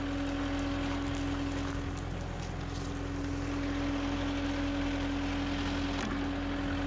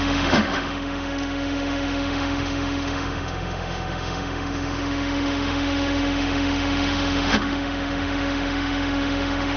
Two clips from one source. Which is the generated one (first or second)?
second